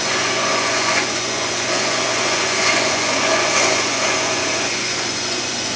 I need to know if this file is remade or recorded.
remade